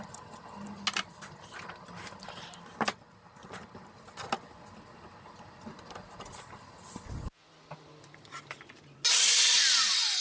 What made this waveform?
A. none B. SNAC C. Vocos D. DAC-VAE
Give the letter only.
A